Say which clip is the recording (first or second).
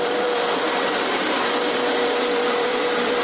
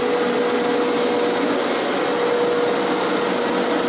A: second